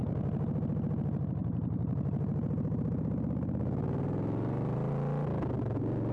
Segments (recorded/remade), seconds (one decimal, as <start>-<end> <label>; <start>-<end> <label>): 0.0-1.4 recorded; 1.4-4.9 remade; 4.9-6.1 recorded